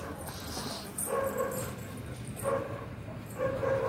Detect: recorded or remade recorded